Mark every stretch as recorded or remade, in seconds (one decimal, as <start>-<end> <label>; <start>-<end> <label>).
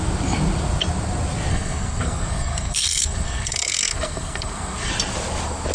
0.0-1.5 recorded; 1.5-4.9 remade; 4.9-5.7 recorded